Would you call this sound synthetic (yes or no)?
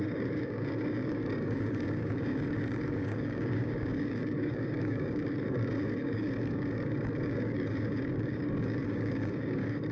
yes